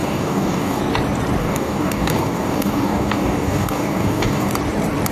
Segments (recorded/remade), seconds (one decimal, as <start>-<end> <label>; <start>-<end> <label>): 0.0-0.8 remade; 0.8-1.4 recorded; 1.4-4.5 remade; 4.5-5.1 recorded